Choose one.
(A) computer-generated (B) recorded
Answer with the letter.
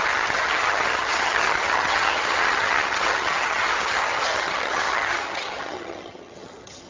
A